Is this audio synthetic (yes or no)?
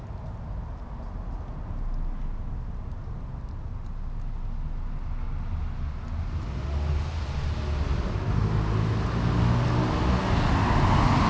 no